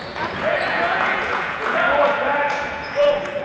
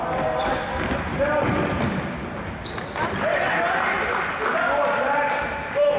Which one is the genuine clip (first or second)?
second